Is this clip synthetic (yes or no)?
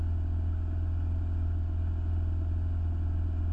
no